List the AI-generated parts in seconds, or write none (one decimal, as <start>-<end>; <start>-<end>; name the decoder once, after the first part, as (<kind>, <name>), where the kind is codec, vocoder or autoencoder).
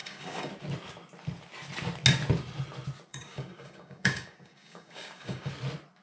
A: 0.0-0.5 (codec, DAC); 3.1-5.5